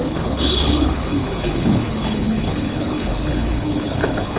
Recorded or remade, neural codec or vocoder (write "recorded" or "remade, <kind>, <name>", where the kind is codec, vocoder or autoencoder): remade, codec, HILCodec